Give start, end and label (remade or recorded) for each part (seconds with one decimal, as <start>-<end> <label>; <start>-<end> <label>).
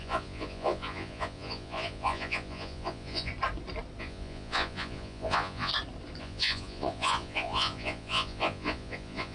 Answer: 0.0-3.3 remade; 3.3-4.0 recorded; 4.0-5.7 remade; 5.7-6.2 recorded; 6.2-9.3 remade